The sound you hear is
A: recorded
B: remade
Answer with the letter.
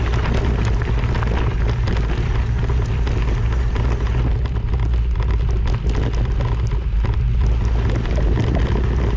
A